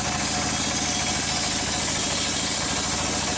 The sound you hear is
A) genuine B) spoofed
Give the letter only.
A